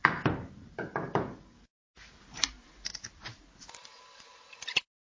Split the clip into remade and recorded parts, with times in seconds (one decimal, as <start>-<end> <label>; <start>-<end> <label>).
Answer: 0.0-3.0 remade; 3.0-5.0 recorded